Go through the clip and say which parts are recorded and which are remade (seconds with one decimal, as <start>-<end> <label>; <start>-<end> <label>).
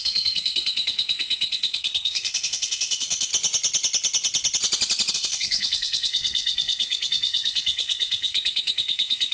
0.0-3.3 remade; 3.3-5.1 recorded; 5.1-9.3 remade